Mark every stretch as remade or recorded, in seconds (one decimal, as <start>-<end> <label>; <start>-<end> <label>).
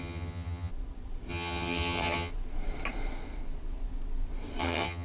0.0-0.7 remade; 0.7-1.3 recorded; 1.3-2.3 remade; 2.3-4.6 recorded; 4.6-5.0 remade